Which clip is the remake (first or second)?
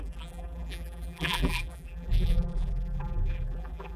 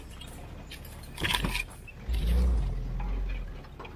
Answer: first